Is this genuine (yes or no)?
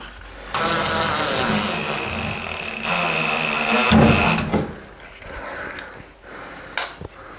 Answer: yes